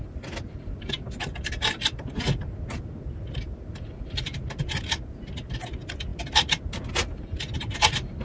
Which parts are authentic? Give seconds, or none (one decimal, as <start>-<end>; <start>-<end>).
0.0-8.2